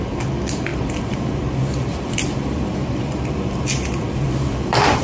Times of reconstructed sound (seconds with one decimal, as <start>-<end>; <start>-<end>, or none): 0.7-1.3; 1.9-5.0